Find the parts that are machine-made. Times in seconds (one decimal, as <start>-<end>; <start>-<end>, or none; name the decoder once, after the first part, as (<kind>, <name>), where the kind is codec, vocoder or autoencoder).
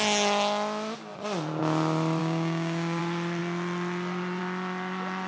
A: 2.2-3.0 (codec, DAC)